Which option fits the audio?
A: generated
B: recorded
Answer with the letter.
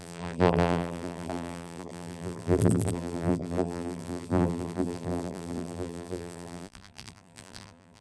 A